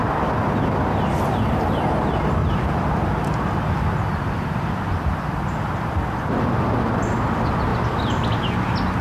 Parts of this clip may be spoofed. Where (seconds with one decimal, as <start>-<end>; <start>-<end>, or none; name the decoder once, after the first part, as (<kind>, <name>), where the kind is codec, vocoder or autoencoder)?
2.4-7.0 (vocoder, BigVGAN v2); 7.7-8.4